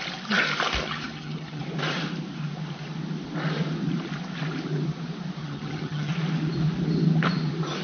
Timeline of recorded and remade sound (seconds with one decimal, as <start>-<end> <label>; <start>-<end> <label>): 0.0-0.8 recorded; 0.8-1.6 remade; 1.6-5.4 recorded; 5.4-6.1 remade; 6.1-7.8 recorded